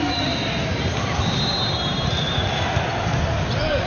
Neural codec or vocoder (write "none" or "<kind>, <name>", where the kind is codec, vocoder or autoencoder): none